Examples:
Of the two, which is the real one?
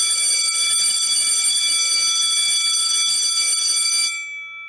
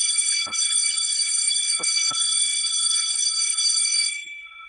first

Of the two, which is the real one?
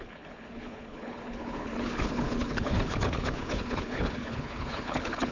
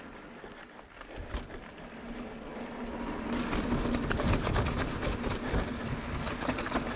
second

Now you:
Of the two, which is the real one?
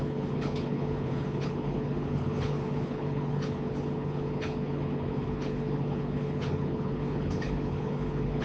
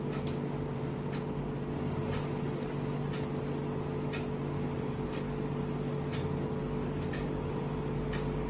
second